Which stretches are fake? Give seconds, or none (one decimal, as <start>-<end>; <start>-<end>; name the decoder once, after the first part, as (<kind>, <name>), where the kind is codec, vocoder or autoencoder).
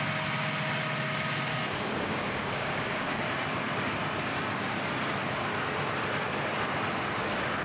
1.5-3.2 (codec, DAC)